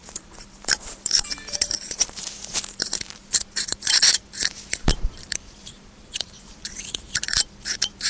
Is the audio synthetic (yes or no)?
yes